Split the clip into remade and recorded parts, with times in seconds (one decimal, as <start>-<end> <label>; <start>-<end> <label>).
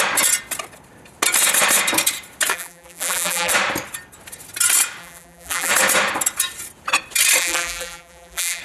0.0-2.5 recorded; 2.5-3.5 remade; 3.5-5.0 recorded; 5.0-5.7 remade; 5.7-7.4 recorded; 7.4-8.6 remade